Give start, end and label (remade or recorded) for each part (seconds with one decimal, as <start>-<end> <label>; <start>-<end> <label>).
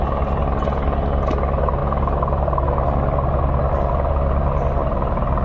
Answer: 0.0-5.4 recorded